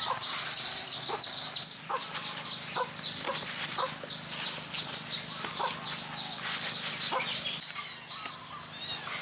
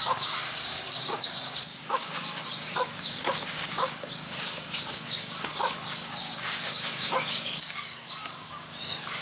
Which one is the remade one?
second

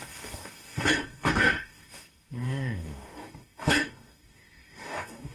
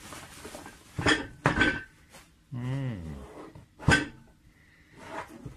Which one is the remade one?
first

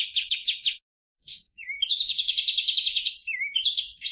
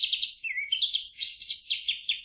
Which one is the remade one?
first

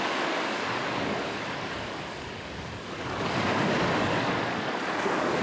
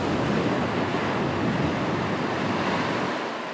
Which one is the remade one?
first